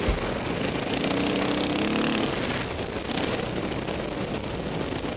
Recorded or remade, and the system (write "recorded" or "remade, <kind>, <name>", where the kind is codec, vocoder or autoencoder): recorded